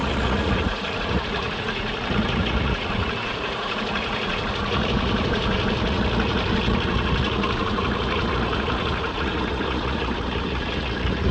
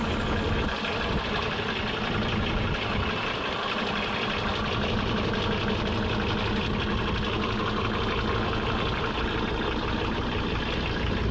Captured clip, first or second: second